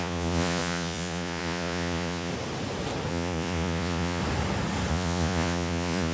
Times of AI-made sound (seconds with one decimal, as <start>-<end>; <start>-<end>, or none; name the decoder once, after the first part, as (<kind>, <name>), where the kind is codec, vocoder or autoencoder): 0.0-2.3 (vocoder, Vocos); 3.1-4.2; 4.9-6.1